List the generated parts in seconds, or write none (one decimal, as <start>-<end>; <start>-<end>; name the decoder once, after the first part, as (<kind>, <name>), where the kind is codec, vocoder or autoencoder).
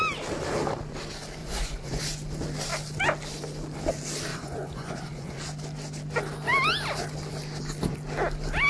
1.4-2.0 (vocoder, Vocos); 4.3-5.4